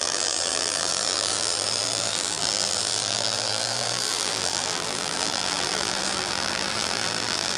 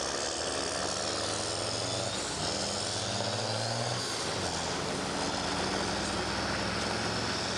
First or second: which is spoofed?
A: first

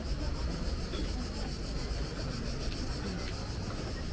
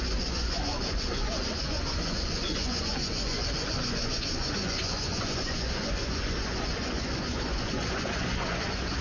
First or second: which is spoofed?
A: second